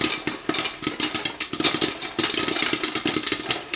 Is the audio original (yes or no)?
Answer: yes